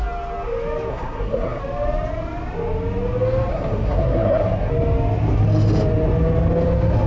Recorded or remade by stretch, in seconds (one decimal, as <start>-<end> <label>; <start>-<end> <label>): 0.0-0.9 recorded; 0.9-1.6 remade; 1.6-3.5 recorded; 3.5-4.7 remade; 4.7-7.1 recorded